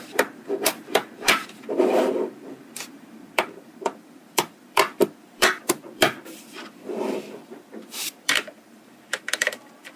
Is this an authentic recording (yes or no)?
no